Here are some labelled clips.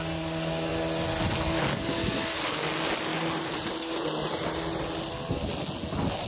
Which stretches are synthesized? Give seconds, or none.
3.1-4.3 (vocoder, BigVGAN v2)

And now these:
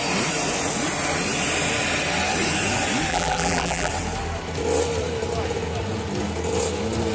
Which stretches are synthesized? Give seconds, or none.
3.1-3.9 (vocoder, BigVGAN v2)